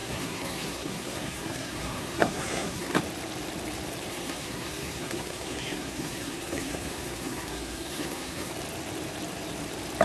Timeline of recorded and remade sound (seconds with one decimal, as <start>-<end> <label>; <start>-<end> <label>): 0.0-3.0 remade; 3.0-4.1 recorded; 4.1-8.5 remade; 8.5-10.0 recorded